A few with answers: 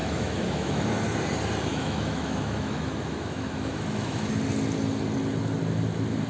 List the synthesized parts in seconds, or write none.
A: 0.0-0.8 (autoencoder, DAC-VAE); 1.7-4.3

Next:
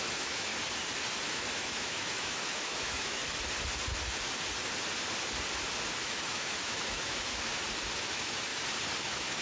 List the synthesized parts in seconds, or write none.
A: 0.0-0.5 (autoencoder, DAC-VAE); 1.2-3.2; 6.0-7.5; 8.0-8.5; 9.0-9.4

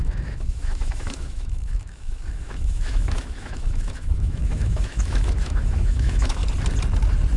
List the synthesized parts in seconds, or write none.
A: 0.0-6.4 (autoencoder, DAC-VAE)

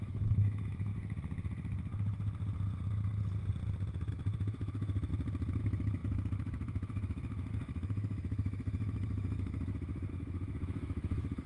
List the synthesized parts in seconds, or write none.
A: 0.0-0.9 (autoencoder, DAC-VAE); 4.1-5.1; 5.6-11.5

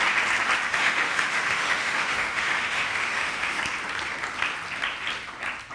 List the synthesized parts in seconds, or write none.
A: 0.7-3.6 (autoencoder, DAC-VAE)

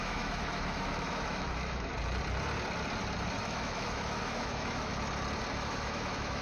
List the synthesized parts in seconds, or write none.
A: 0.0-1.9 (autoencoder, DAC-VAE); 3.4-4.9; 5.5-6.4

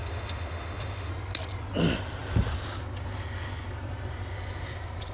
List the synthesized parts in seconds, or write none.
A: 0.0-1.1 (autoencoder, DAC-VAE)

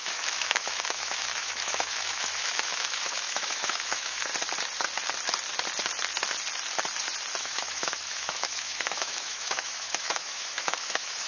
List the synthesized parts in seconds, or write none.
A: 0.0-4.3 (autoencoder, DAC-VAE); 7.4-11.3